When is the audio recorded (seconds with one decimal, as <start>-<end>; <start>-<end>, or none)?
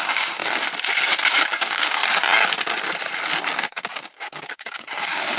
0.4-1.5; 2.0-3.7